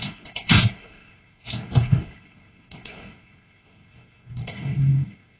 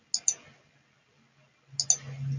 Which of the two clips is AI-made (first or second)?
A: first